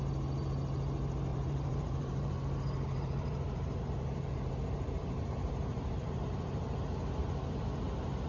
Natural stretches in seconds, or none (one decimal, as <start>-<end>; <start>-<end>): 0.0-1.3; 6.2-7.2; 7.9-8.3